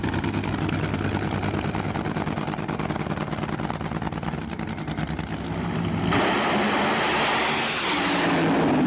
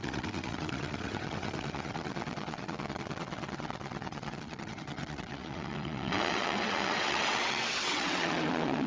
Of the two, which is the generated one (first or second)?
second